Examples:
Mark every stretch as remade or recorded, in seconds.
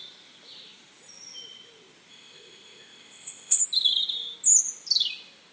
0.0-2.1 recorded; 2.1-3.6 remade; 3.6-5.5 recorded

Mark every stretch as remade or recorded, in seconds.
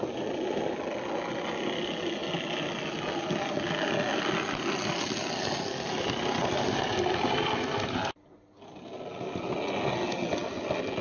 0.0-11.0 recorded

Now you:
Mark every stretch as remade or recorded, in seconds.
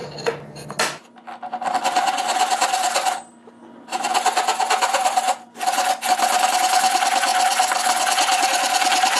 0.0-9.2 recorded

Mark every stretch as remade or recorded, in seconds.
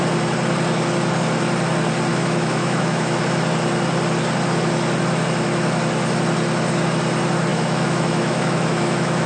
0.0-2.1 recorded; 2.1-3.2 remade; 3.2-7.5 recorded; 7.5-9.3 remade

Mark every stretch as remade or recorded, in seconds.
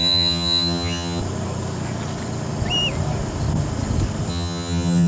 0.0-1.2 remade; 1.2-4.3 recorded; 4.3-5.1 remade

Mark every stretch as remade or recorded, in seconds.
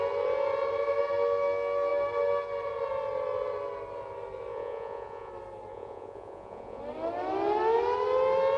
0.0-4.5 recorded; 4.5-5.3 remade; 5.3-5.7 recorded; 5.7-6.8 remade; 6.8-8.6 recorded